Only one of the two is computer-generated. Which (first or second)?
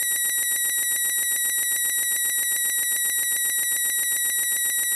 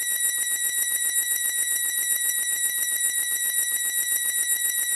second